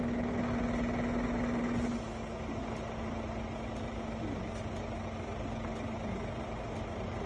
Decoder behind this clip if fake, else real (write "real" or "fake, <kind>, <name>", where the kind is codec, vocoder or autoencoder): real